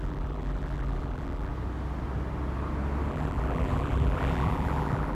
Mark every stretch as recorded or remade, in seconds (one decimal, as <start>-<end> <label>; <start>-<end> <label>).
0.0-1.5 remade; 1.5-3.1 recorded; 3.1-5.1 remade